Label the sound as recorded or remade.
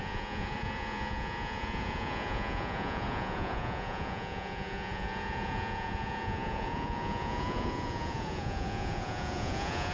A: remade